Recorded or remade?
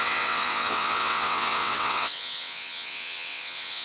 remade